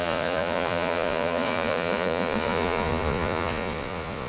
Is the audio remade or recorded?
remade